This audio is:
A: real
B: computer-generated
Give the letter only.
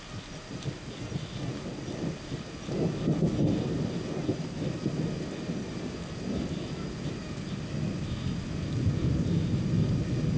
A